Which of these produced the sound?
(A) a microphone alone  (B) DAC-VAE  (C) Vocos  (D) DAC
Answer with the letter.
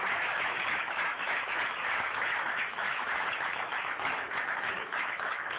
B